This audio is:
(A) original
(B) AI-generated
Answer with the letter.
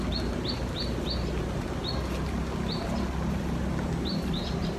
A